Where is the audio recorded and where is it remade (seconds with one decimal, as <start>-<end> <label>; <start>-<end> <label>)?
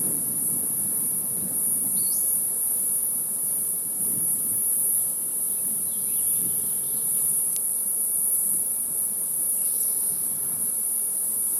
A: 0.0-7.7 recorded; 7.7-10.8 remade; 10.8-11.6 recorded